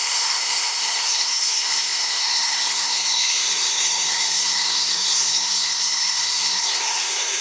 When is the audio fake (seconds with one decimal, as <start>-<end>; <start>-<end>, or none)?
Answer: 0.0-7.4